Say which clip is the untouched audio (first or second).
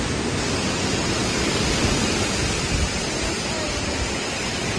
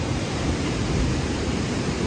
first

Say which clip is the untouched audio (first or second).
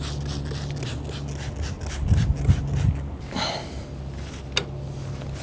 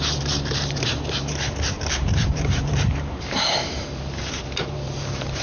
first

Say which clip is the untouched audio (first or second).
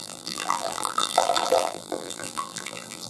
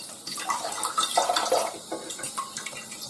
second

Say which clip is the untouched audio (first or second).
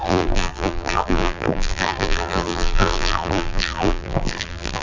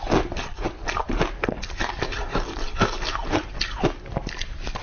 second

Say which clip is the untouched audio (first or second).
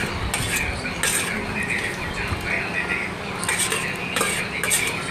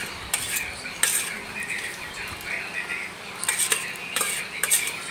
first